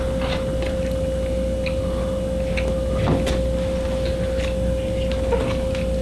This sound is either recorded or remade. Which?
recorded